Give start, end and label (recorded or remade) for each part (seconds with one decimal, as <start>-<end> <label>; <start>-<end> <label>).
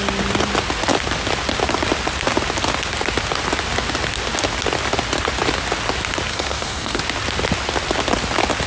0.0-6.3 recorded; 6.3-7.0 remade; 7.0-8.7 recorded